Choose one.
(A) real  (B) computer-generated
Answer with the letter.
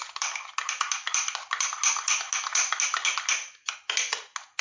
A